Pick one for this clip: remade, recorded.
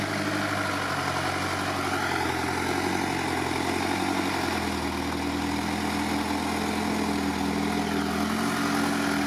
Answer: recorded